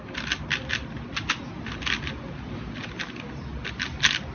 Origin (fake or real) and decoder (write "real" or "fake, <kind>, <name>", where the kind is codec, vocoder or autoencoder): real